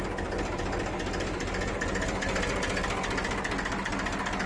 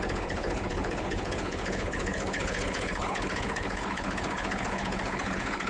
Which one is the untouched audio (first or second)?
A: first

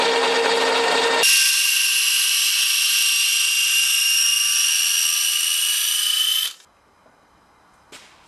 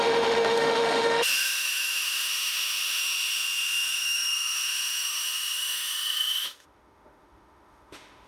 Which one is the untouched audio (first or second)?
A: first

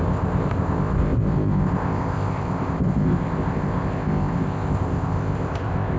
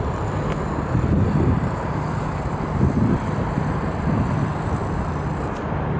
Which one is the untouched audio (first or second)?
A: second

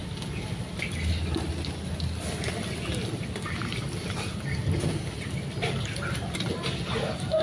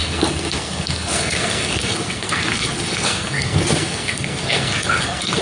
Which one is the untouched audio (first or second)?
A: first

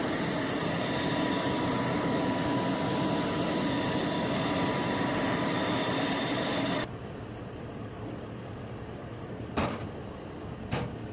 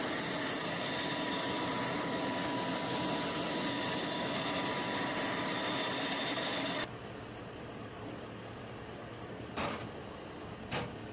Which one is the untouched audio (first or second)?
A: second